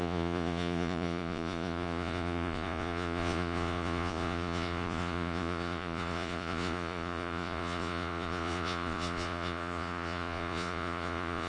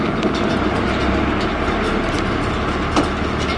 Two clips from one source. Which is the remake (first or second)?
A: first